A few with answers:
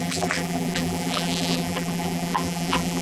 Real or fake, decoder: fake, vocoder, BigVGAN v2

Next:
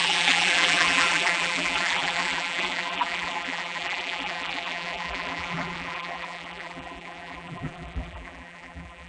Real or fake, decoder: fake, vocoder, BigVGAN v2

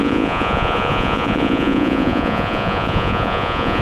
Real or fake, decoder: fake, vocoder, Vocos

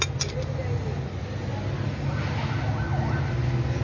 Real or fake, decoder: real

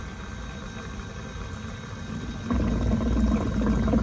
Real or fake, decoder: real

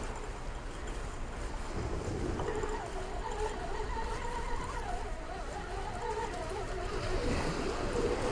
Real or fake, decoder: real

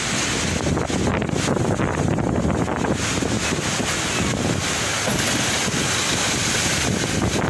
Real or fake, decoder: real